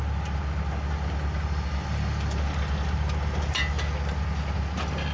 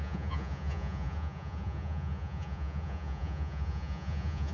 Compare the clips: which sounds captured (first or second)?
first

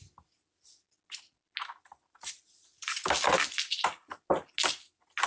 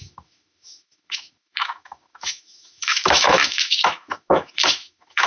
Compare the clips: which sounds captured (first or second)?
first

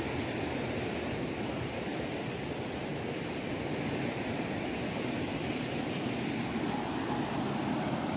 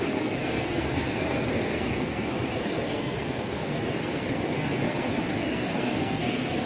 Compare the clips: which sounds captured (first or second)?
first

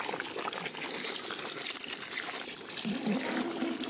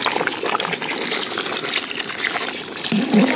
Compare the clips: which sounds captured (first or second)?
second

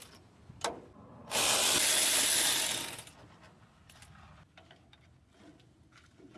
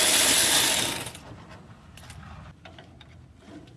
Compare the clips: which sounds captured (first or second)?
first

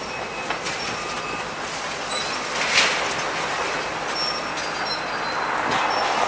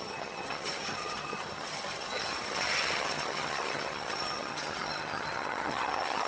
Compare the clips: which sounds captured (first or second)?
first